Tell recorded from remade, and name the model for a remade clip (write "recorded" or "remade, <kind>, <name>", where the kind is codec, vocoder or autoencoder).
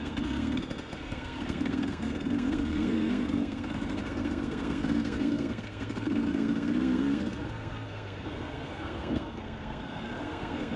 remade, codec, SNAC